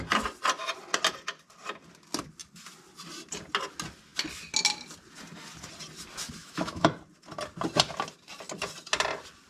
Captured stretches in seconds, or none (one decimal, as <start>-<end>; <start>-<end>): 0.0-6.4; 6.9-9.5